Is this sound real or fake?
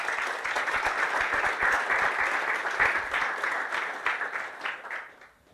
real